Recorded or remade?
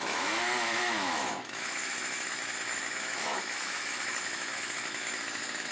remade